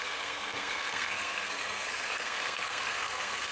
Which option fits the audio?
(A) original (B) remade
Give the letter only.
B